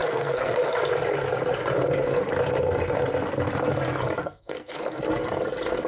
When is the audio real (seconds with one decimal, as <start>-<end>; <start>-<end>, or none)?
0.7-4.2; 5.0-5.9